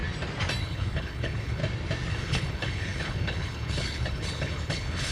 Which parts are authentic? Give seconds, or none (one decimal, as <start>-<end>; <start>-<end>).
0.0-0.6; 1.6-2.1